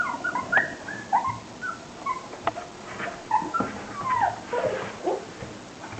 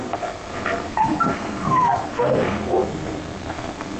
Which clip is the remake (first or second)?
second